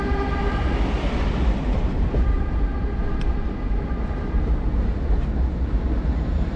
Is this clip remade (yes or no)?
yes